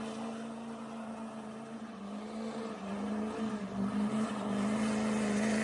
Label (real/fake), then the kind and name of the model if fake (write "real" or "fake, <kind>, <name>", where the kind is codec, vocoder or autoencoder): real